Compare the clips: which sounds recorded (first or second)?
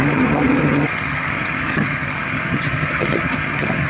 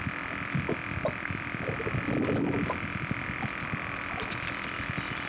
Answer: second